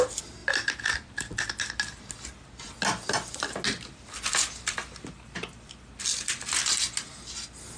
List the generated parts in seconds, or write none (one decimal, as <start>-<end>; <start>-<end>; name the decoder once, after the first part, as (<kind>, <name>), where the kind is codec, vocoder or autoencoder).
none